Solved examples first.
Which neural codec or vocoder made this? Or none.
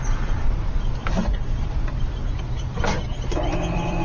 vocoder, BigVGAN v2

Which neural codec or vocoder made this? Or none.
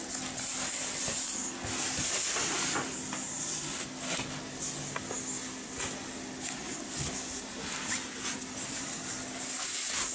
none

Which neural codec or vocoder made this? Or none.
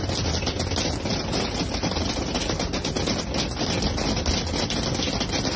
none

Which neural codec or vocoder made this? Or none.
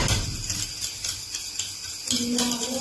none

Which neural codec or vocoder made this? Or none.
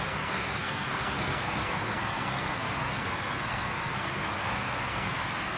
codec, SNAC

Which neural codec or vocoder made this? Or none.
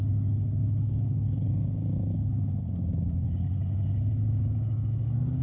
codec, DAC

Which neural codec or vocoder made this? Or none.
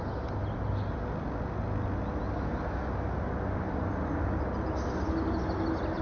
none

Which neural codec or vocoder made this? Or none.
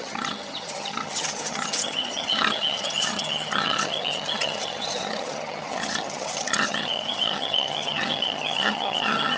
vocoder, HiFi-GAN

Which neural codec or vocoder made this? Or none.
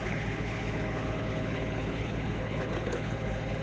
codec, HILCodec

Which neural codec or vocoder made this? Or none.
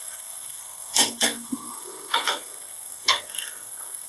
codec, SNAC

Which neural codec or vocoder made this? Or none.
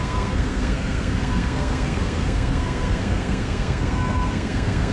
codec, SNAC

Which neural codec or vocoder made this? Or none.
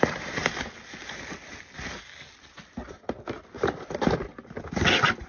none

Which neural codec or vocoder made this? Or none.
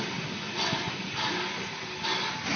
none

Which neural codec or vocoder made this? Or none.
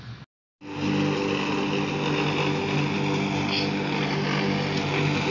none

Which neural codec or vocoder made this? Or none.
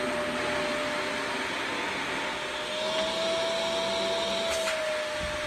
none